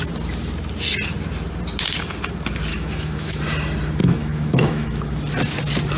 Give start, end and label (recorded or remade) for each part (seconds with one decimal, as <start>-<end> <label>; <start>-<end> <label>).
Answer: 0.0-2.7 recorded; 2.7-3.4 remade; 3.4-4.0 recorded; 4.0-5.1 remade; 5.1-6.0 recorded